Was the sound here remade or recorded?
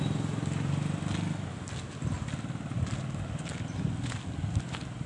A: recorded